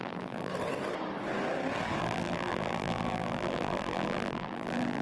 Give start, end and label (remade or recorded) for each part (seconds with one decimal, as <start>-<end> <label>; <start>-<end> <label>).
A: 0.0-0.5 remade; 0.5-2.0 recorded; 2.0-5.0 remade